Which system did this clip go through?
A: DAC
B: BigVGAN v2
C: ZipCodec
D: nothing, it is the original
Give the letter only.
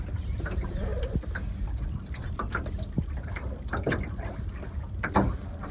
D